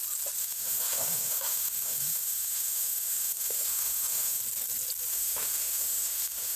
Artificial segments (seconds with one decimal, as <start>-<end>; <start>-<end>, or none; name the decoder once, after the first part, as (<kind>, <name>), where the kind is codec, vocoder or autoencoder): 0.4-4.4 (autoencoder, DAC-VAE); 5.1-6.6